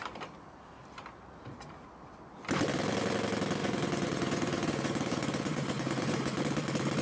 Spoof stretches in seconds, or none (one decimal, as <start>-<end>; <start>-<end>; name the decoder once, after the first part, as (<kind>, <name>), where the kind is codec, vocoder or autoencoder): 3.6-6.4 (vocoder, Vocos)